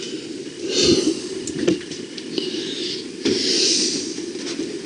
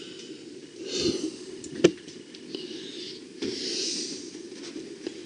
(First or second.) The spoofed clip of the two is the first